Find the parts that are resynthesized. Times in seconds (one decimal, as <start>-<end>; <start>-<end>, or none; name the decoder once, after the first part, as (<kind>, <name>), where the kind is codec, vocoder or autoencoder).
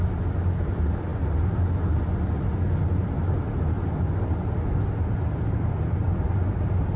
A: none